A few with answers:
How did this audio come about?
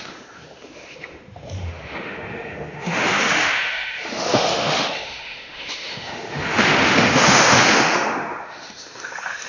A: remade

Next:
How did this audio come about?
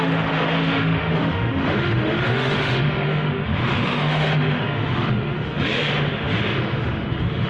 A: remade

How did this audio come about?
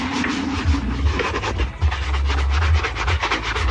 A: recorded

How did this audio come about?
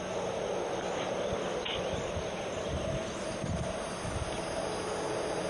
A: recorded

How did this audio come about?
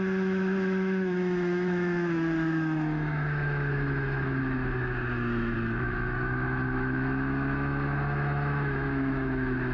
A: remade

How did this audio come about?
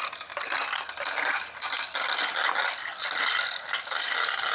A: recorded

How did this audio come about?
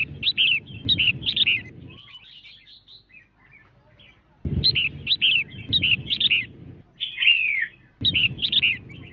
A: recorded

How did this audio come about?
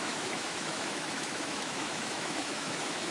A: remade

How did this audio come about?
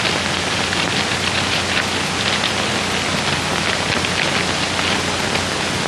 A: recorded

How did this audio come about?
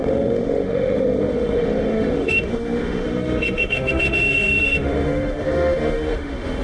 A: remade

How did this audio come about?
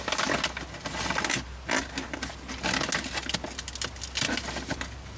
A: recorded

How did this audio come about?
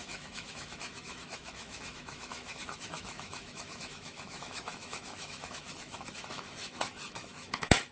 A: remade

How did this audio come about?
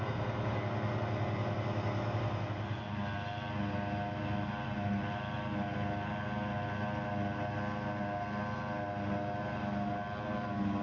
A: recorded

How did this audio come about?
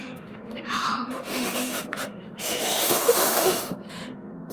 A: remade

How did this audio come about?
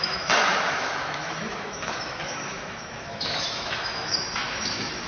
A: remade